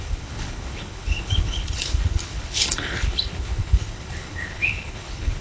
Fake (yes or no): yes